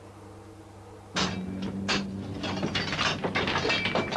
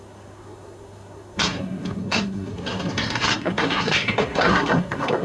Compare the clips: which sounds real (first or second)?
first